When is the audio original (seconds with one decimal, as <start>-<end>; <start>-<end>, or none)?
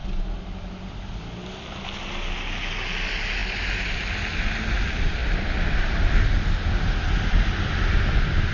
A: 0.0-8.5